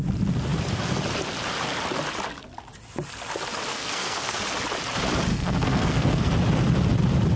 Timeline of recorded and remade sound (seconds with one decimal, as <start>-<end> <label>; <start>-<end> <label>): 0.0-3.7 recorded; 3.7-4.4 remade; 4.4-5.3 recorded; 5.3-6.3 remade; 6.3-7.4 recorded